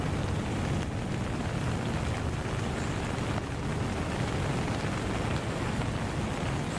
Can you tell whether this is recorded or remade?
recorded